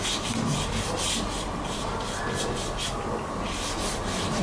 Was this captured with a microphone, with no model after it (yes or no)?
yes